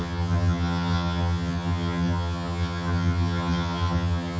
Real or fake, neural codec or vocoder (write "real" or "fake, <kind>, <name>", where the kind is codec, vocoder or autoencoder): fake, vocoder, HiFi-GAN